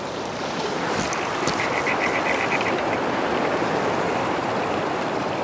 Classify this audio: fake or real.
fake